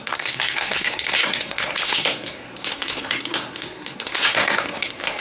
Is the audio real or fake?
fake